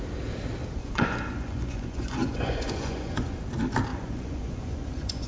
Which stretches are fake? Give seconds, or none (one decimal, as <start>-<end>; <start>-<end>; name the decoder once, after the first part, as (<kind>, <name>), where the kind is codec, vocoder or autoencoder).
0.8-3.4 (vocoder, Vocos); 3.9-5.3